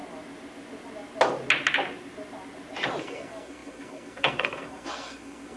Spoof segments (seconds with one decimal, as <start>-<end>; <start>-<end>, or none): 3.0-5.6